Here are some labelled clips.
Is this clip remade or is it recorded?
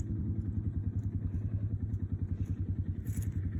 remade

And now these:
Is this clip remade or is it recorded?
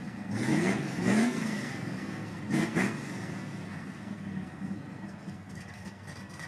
remade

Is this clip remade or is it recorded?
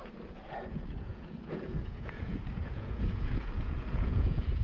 remade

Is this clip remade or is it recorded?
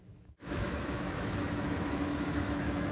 remade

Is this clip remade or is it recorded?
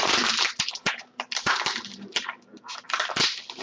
remade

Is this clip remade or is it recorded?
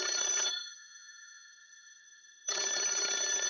remade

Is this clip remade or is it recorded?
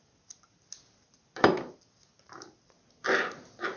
recorded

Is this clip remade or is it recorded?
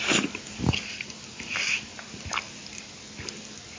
recorded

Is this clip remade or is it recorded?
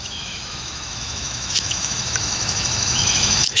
remade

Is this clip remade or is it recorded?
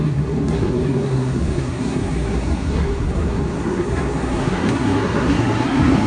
remade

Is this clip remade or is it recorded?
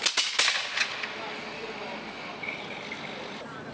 recorded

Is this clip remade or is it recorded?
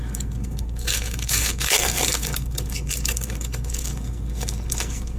remade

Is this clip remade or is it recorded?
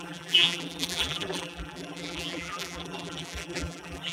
remade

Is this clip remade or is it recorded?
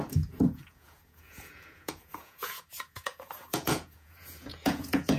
remade